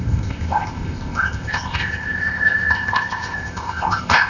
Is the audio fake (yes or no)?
yes